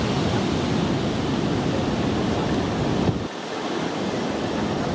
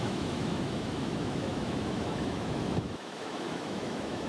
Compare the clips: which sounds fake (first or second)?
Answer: second